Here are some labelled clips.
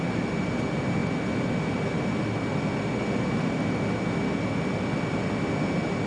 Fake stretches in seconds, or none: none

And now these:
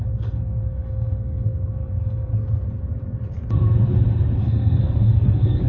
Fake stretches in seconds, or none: 0.0-2.3 (codec, SNAC); 4.4-5.7

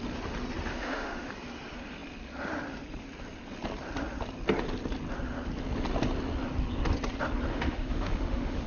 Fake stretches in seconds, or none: 0.7-1.3 (autoencoder, DAC-VAE); 7.5-8.7

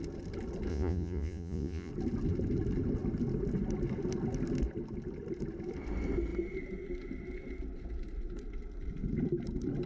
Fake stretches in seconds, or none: 0.7-1.9 (vocoder, Vocos)

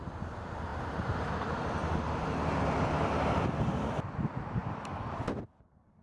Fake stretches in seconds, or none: 0.7-3.3 (vocoder, BigVGAN v2); 4.6-5.3

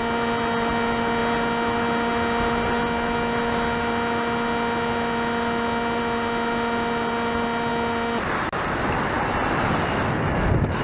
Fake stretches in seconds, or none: none

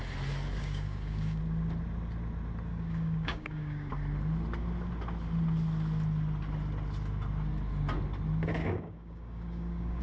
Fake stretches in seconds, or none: 0.6-1.4 (codec, DAC); 2.7-3.9; 8.6-10.0